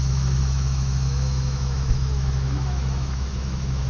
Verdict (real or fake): fake